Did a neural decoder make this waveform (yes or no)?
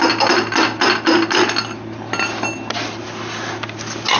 no